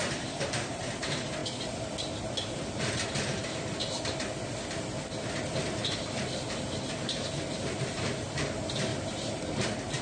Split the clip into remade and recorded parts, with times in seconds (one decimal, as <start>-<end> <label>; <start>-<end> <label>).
0.0-1.4 remade; 1.4-5.8 recorded; 5.8-8.9 remade; 8.9-9.6 recorded; 9.6-10.0 remade